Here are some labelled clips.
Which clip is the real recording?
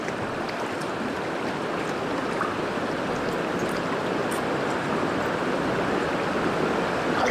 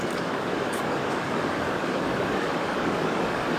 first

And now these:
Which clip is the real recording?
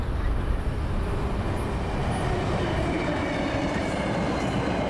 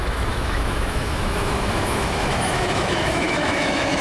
first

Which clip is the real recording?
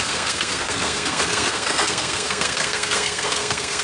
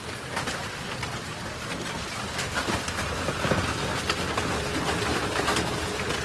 second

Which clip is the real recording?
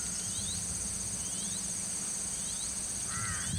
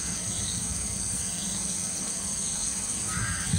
first